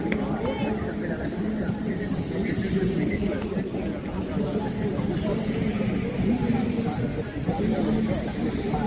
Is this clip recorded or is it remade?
recorded